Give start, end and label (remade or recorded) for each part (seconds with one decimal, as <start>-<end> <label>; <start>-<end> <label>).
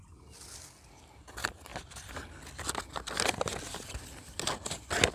0.0-5.1 recorded